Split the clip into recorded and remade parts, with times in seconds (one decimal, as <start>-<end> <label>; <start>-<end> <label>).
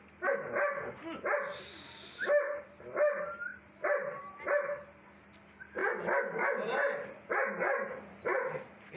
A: 0.0-9.0 recorded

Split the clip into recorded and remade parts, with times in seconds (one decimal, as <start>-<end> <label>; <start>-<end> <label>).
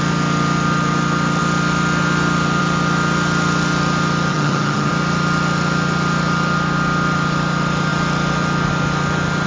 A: 0.0-4.3 recorded; 4.3-4.9 remade; 4.9-9.5 recorded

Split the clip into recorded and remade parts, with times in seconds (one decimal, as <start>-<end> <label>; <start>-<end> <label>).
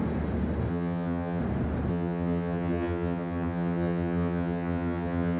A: 0.0-0.7 recorded; 0.7-1.4 remade; 1.4-1.9 recorded; 1.9-5.4 remade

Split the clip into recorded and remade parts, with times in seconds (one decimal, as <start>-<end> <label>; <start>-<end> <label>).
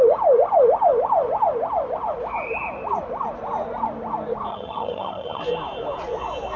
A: 0.0-4.5 recorded; 4.5-5.4 remade; 5.4-6.6 recorded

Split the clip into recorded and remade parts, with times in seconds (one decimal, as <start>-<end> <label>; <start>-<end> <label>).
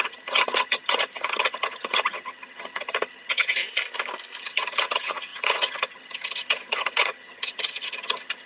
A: 0.0-3.6 remade; 3.6-4.4 recorded; 4.4-8.5 remade